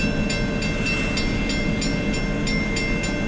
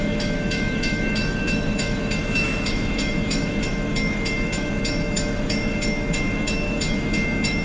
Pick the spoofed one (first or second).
second